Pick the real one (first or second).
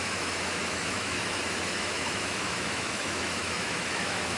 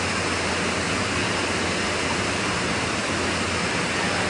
second